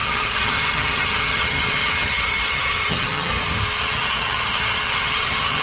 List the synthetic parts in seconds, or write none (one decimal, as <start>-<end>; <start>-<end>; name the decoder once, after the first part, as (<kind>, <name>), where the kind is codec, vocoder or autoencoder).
0.0-3.3 (vocoder, HiFi-GAN); 3.8-5.6